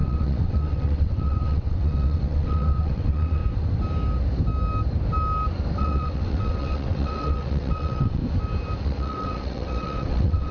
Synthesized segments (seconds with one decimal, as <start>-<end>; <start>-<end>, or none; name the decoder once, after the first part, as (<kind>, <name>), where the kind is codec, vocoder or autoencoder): 0.0-3.4 (vocoder, WaveNeXt); 5.8-8.2; 8.8-10.5